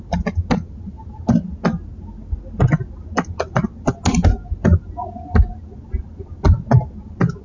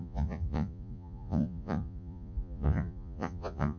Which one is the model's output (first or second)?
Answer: second